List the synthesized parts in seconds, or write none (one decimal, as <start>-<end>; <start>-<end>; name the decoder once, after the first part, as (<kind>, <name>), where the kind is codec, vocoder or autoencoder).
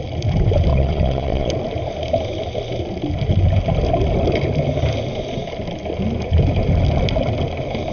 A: 0.7-1.5 (vocoder, Vocos)